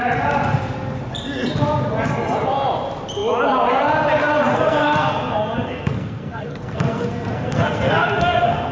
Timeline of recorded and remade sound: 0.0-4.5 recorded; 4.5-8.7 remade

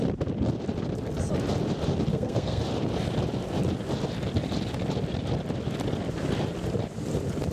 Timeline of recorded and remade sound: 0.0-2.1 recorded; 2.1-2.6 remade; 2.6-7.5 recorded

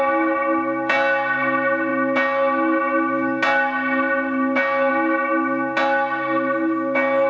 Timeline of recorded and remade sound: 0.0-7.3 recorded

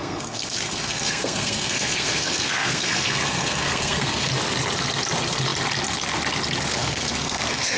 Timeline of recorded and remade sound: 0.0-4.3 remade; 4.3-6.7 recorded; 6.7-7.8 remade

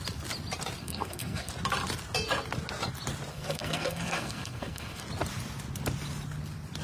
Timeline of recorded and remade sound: 0.0-0.8 recorded; 0.8-1.5 remade; 1.5-3.3 recorded; 3.3-5.0 remade; 5.0-6.8 recorded